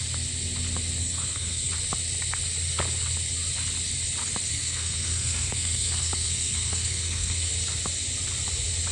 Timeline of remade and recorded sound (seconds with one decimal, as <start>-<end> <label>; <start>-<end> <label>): 0.0-1.0 recorded; 1.0-1.7 remade; 1.7-4.5 recorded; 4.5-7.5 remade; 7.5-8.9 recorded